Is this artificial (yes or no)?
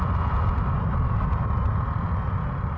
no